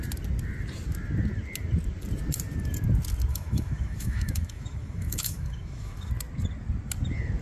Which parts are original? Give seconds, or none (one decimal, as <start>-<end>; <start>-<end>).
0.0-3.3; 6.1-7.4